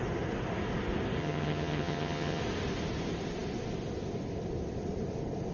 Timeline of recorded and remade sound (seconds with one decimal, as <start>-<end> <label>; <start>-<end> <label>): 0.0-1.2 recorded; 1.2-2.4 remade; 2.4-5.5 recorded